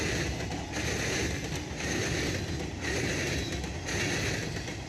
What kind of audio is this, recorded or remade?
recorded